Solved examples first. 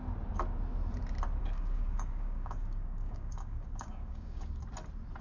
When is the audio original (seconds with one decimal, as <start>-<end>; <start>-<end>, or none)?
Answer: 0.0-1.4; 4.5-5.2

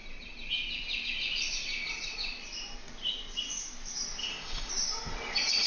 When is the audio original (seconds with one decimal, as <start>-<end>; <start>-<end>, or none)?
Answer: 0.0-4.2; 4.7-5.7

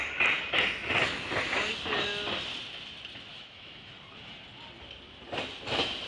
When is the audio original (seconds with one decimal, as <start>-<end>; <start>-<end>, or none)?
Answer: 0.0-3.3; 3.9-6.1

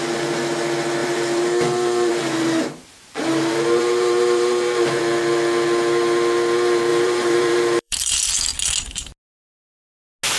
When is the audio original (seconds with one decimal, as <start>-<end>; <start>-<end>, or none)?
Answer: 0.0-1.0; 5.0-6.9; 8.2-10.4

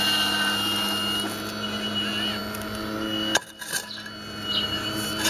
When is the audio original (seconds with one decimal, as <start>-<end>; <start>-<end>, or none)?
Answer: 0.0-5.3

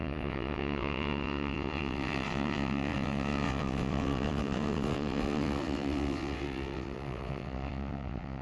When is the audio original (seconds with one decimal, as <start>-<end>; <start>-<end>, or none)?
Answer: none

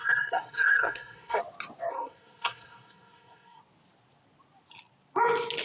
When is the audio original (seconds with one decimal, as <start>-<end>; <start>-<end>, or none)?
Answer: 1.4-1.9; 3.6-5.6